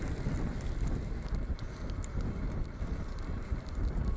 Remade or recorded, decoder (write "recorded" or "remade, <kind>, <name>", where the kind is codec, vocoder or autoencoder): recorded